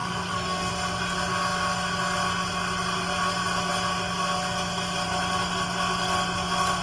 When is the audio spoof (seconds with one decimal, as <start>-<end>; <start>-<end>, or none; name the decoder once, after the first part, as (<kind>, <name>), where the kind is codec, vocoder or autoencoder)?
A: 0.0-0.7 (codec, SNAC)